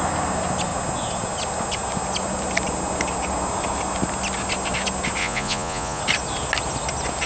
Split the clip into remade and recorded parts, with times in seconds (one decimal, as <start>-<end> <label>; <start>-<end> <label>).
0.0-5.2 recorded; 5.2-6.0 remade; 6.0-7.3 recorded